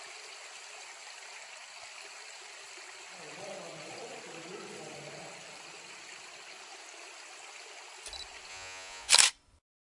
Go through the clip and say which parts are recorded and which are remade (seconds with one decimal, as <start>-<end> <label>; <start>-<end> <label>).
0.0-8.5 recorded; 8.5-9.1 remade; 9.1-9.9 recorded